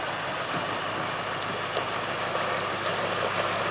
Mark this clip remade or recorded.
recorded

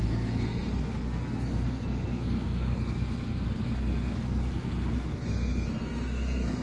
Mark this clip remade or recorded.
remade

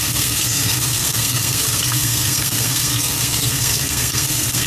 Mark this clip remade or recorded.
remade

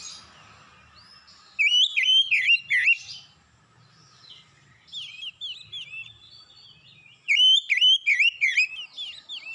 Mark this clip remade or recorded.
recorded